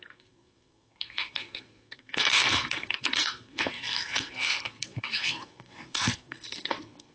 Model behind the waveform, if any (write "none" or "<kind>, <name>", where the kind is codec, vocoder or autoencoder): codec, SNAC